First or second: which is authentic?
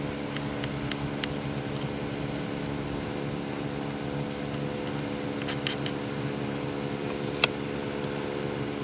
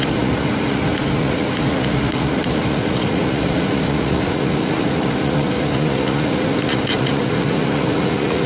first